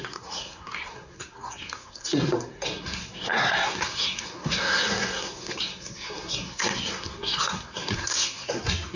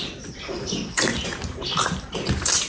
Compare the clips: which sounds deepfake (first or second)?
first